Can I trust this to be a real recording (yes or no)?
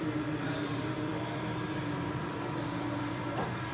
no